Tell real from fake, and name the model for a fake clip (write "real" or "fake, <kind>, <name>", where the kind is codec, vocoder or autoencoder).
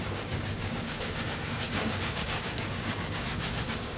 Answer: fake, codec, DAC